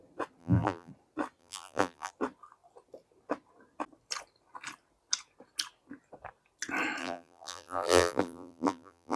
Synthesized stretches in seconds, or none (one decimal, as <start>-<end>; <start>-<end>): 0.4-0.9; 1.4-2.1; 7.0-9.2